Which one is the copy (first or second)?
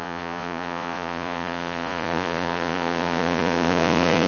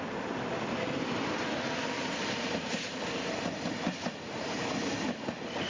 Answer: first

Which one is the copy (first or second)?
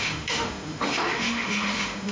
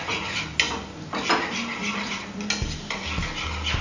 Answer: first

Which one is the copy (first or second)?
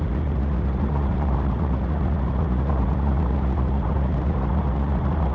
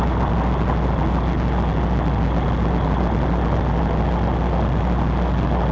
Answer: first